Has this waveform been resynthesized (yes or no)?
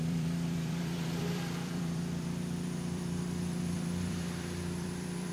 yes